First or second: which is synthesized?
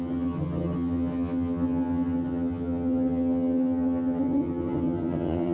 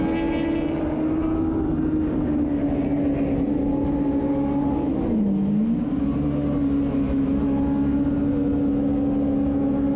first